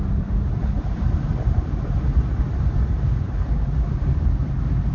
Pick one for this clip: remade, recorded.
recorded